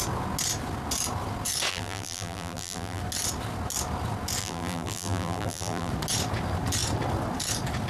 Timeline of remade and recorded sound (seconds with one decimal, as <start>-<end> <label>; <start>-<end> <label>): 0.0-1.7 recorded; 1.7-3.0 remade; 3.0-4.4 recorded; 4.4-5.9 remade; 5.9-7.9 recorded